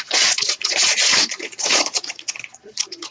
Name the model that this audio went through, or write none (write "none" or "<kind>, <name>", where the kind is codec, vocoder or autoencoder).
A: vocoder, Vocos